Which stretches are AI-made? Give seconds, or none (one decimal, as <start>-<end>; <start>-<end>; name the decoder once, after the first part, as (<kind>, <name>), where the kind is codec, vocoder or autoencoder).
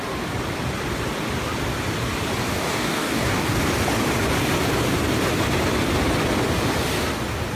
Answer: 2.5-3.6 (codec, DAC)